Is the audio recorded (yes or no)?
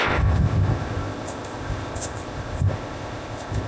no